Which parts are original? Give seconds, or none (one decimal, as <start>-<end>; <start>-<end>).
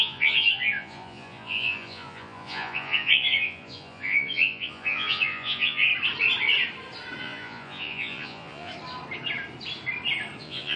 5.9-7.2; 8.7-10.4